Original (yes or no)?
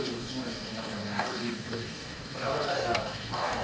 no